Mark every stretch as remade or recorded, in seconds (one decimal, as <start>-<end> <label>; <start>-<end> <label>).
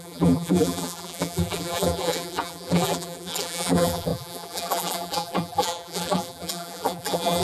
0.0-7.4 remade